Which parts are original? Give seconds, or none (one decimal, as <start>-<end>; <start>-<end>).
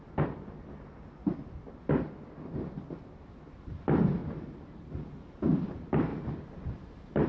0.0-4.2; 4.9-6.1